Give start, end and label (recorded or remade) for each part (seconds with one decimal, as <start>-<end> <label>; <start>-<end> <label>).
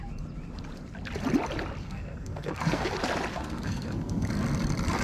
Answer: 0.0-1.8 recorded; 1.8-2.9 remade; 2.9-3.3 recorded; 3.3-4.3 remade; 4.3-5.0 recorded